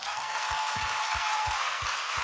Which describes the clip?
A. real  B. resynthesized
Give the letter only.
B